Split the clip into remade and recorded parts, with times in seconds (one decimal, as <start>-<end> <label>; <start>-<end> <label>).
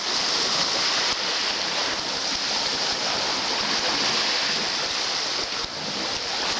0.0-6.6 recorded